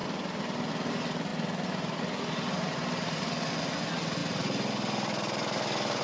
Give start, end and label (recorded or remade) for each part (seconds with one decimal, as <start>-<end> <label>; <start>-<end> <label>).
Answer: 0.0-6.0 recorded